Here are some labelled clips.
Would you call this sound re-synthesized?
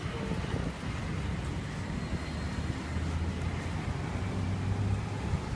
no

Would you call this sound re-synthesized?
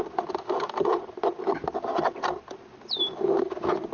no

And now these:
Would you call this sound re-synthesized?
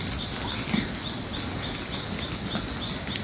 no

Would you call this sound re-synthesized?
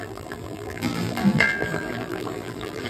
yes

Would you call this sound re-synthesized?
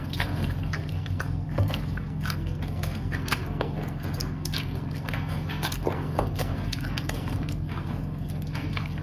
yes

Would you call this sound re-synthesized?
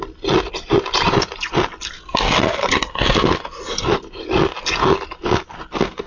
no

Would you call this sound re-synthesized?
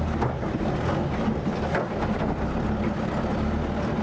no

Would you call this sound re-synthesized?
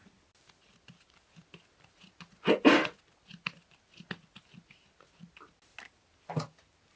no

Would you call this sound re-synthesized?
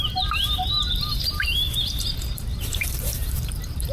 yes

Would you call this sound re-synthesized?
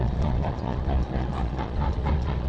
yes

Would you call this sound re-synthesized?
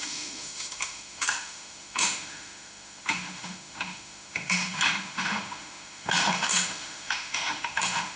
yes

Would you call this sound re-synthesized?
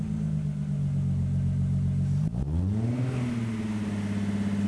no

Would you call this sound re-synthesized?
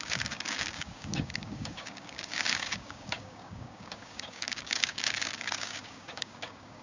yes